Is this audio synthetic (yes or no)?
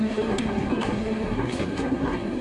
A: yes